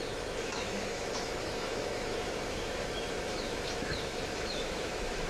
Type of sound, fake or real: fake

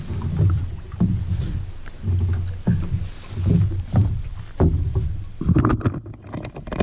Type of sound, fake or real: real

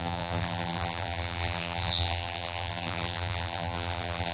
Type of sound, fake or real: fake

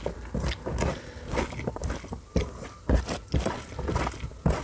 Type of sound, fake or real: real